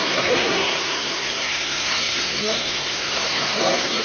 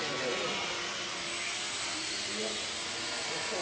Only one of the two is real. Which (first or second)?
second